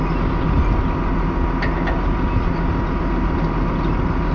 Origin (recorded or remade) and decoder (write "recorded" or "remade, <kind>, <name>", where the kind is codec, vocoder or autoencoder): recorded